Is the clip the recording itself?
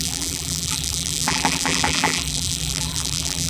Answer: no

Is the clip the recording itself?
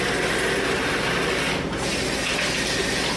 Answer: yes